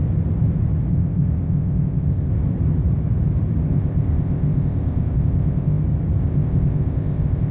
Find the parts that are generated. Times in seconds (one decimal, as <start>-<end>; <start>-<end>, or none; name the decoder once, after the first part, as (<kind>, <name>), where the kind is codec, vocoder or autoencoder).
0.9-2.3 (codec, ZipCodec); 3.7-5.8; 6.2-7.5